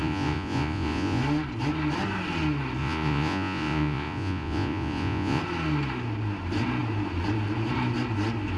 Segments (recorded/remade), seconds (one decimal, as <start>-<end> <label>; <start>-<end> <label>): 0.0-1.2 remade; 1.2-2.8 recorded; 2.8-5.4 remade; 5.4-8.6 recorded